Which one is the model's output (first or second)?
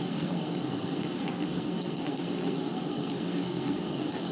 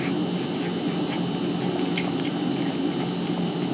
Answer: first